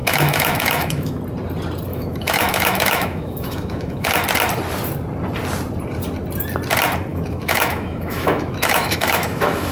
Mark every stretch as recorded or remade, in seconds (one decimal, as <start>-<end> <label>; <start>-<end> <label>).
0.0-1.2 remade; 1.2-1.9 recorded; 1.9-4.1 remade; 4.1-7.1 recorded; 7.1-9.7 remade